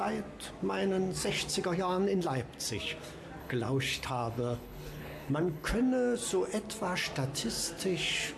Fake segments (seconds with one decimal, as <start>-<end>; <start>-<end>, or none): 3.4-5.7